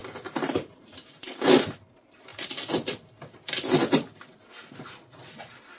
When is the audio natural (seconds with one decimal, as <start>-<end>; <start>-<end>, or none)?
2.3-5.8